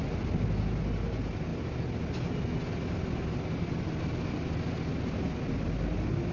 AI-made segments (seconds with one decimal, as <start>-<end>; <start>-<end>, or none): none